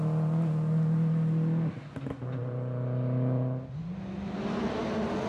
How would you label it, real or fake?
real